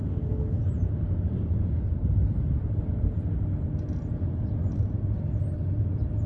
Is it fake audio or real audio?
real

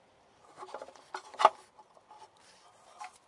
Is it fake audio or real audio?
real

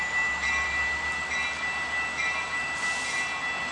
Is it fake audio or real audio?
real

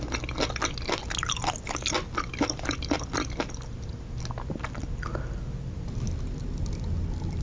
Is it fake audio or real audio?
real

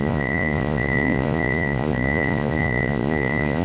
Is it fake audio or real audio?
fake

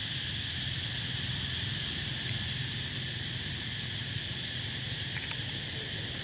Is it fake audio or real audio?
real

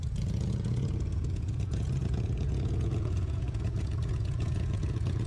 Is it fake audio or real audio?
fake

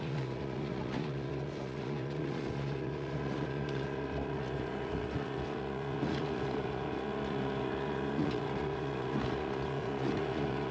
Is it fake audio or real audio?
fake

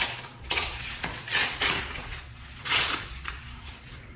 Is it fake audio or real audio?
fake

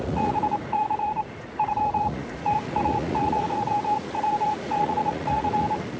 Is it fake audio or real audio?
fake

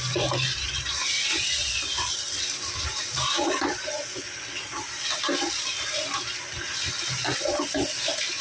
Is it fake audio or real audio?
real